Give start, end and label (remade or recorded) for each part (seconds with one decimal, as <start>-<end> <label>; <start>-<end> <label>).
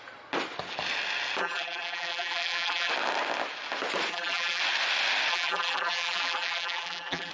0.0-1.4 recorded; 1.4-2.9 remade; 2.9-4.1 recorded; 4.1-4.6 remade; 4.6-5.3 recorded; 5.3-7.3 remade